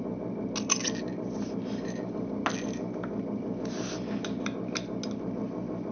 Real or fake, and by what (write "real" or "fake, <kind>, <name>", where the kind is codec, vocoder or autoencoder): real